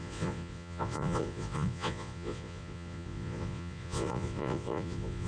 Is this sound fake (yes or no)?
yes